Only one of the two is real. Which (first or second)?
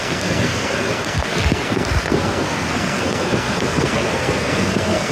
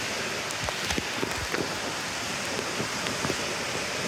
second